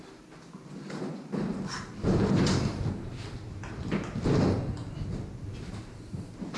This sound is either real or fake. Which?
real